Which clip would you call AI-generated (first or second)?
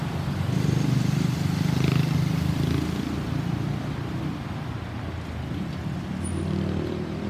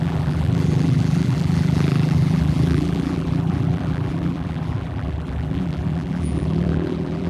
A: second